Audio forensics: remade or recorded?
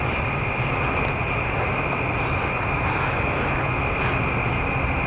recorded